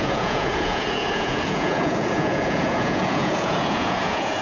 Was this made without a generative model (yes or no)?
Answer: no